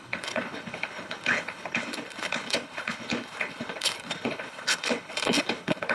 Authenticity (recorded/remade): remade